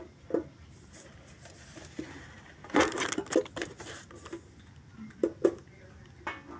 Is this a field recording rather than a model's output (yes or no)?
yes